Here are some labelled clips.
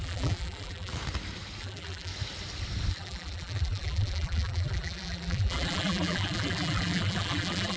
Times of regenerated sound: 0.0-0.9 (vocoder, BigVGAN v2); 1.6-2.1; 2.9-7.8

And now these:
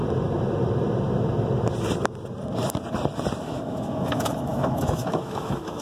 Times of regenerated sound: 3.4-5.8 (autoencoder, DAC-VAE)

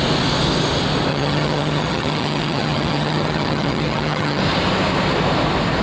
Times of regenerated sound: 1.1-4.4 (vocoder, HiFi-GAN)

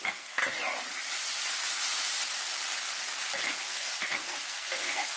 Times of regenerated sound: 0.0-0.4 (codec, SNAC); 3.5-5.2

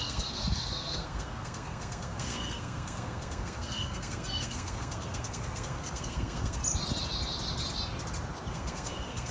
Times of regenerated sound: 0.0-6.6 (codec, SNAC); 8.5-9.3